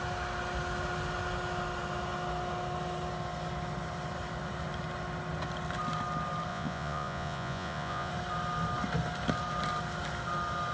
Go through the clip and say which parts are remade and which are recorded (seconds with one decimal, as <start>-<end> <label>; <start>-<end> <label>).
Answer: 0.0-6.5 recorded; 6.5-8.1 remade; 8.1-10.7 recorded